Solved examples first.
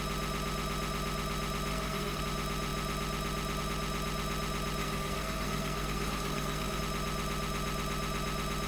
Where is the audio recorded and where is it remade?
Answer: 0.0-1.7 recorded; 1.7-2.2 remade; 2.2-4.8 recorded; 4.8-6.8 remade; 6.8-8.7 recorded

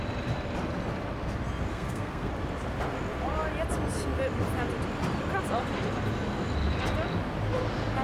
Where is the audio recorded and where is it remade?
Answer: 0.0-1.7 recorded; 1.7-2.3 remade; 2.3-8.0 recorded

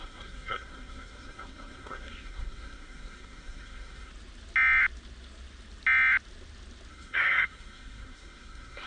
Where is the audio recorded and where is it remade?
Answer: 0.0-4.1 remade; 4.1-6.9 recorded; 6.9-8.9 remade

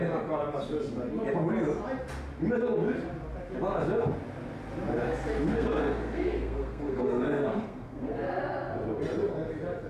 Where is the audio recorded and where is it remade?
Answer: 0.0-5.5 recorded; 5.5-8.4 remade; 8.4-9.9 recorded